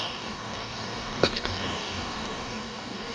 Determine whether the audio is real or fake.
fake